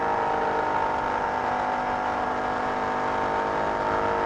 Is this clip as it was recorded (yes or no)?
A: yes